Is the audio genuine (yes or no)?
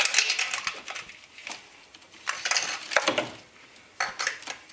yes